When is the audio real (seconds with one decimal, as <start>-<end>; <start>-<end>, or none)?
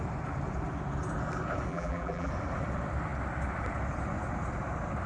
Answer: 0.0-1.7; 2.3-5.1